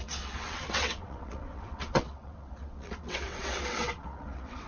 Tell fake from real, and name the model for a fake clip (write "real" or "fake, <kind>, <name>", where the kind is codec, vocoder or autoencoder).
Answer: fake, vocoder, WaveNeXt